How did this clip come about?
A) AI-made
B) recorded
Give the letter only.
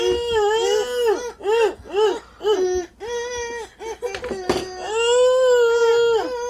B